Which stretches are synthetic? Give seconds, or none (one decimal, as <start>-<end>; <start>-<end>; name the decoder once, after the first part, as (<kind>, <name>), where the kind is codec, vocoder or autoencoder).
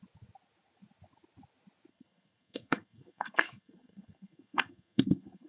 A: 1.9-5.5 (codec, SNAC)